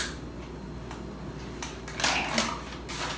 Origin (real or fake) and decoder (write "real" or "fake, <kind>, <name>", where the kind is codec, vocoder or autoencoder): real